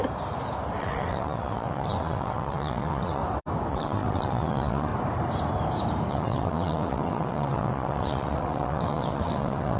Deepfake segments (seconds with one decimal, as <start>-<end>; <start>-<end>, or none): 0.8-3.2; 3.7-4.9; 6.1-9.8